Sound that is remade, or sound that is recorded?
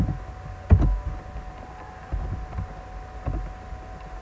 recorded